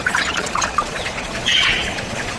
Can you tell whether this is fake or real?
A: fake